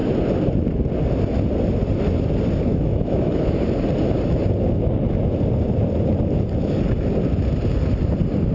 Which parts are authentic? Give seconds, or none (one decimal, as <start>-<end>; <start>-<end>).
0.0-2.7; 3.5-8.5